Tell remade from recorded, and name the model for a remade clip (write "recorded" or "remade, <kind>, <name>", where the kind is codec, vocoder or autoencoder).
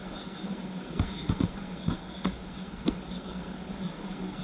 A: remade, codec, SNAC